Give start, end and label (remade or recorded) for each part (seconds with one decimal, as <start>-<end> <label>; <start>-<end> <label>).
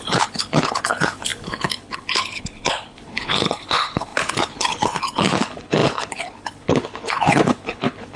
0.0-8.2 remade